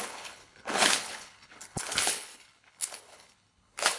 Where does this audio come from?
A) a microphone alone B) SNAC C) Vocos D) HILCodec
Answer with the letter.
D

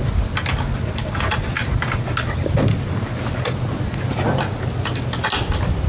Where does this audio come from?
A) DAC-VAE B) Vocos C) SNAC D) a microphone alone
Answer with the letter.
D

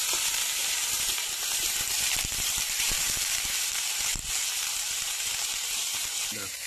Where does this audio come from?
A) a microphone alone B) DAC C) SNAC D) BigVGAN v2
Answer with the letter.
D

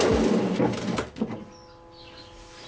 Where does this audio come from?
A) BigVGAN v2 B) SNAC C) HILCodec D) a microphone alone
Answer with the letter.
D